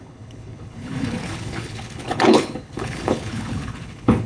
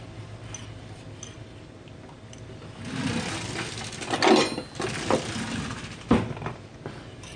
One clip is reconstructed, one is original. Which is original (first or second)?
second